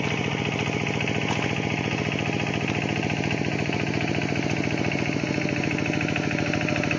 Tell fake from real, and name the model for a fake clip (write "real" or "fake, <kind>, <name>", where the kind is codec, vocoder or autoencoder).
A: real